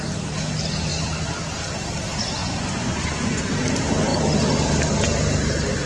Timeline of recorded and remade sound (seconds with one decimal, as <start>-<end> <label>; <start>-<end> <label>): 0.0-2.4 recorded; 2.4-3.4 remade; 3.4-5.9 recorded